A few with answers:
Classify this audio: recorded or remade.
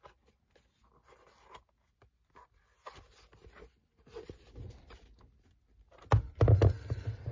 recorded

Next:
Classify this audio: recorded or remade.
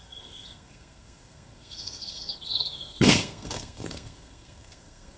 remade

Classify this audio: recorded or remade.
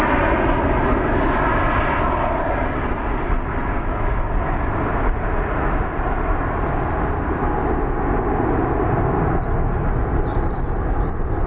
recorded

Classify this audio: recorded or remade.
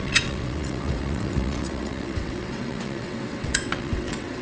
remade